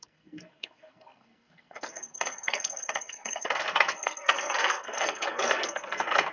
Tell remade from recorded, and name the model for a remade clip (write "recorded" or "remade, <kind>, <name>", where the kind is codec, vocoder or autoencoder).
remade, codec, SNAC